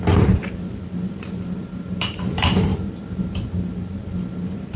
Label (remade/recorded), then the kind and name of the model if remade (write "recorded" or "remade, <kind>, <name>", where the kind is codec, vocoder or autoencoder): remade, vocoder, BigVGAN v2